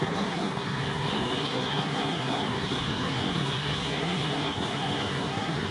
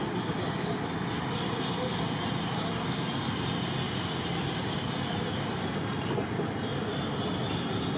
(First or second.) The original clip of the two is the second